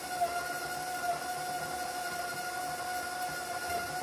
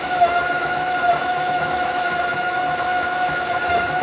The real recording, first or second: first